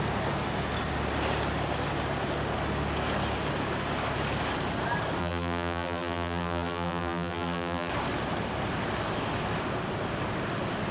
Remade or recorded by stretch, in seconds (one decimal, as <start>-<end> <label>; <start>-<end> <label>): 0.0-5.2 recorded; 5.2-7.9 remade; 7.9-10.9 recorded